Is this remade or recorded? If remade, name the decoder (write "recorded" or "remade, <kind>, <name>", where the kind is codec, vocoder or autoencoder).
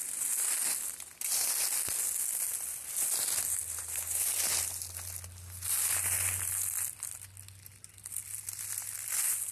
recorded